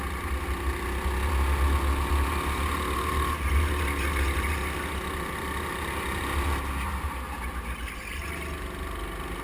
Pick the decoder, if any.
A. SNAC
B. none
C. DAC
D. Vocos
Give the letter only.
B